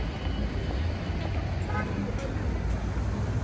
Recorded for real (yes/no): yes